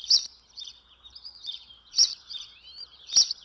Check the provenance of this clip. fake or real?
fake